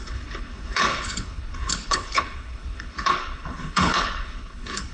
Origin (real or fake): fake